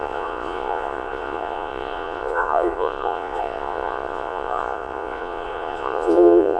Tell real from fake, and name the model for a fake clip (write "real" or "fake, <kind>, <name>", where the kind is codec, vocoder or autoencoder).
fake, vocoder, Vocos